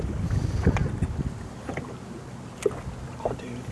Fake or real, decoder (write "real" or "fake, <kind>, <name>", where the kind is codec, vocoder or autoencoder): real